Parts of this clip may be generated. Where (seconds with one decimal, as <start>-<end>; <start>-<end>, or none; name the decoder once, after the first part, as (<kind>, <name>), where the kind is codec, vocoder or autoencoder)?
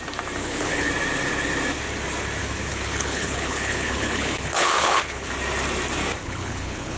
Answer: 0.4-0.9 (codec, HILCodec); 2.4-5.3; 6.2-7.0